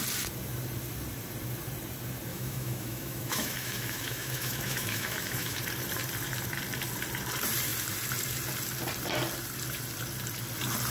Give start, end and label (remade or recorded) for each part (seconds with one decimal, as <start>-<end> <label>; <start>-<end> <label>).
0.0-2.3 recorded; 2.3-5.6 remade; 5.6-10.9 recorded